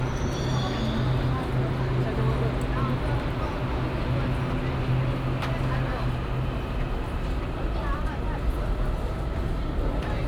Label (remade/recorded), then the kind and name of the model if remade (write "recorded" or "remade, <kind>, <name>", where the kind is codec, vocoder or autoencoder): recorded